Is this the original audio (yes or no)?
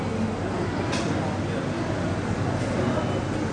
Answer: yes